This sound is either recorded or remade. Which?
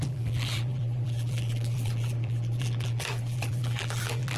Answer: remade